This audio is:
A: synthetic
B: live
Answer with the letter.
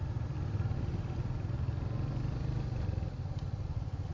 B